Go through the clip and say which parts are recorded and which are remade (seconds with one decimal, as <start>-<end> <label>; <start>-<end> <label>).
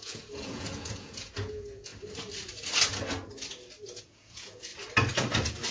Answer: 0.0-1.9 remade; 1.9-4.0 recorded; 4.0-4.7 remade; 4.7-5.7 recorded